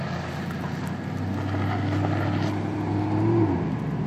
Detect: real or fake real